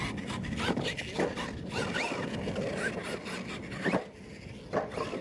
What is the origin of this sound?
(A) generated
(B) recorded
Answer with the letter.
B